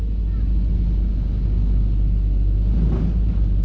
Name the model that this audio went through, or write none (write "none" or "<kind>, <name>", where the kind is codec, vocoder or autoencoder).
none